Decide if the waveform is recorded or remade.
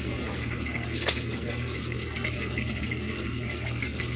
remade